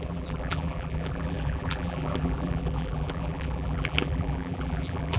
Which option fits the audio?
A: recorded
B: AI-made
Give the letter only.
B